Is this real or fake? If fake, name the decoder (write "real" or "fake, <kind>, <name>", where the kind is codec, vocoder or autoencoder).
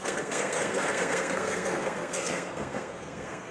fake, codec, SNAC